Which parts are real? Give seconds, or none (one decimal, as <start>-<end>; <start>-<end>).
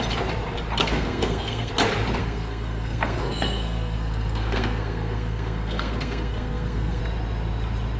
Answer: 0.0-0.8; 1.7-2.2; 7.0-8.0